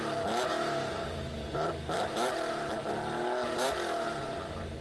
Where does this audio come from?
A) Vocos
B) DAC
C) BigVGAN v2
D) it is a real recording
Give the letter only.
D